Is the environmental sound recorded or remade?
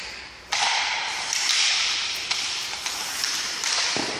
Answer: remade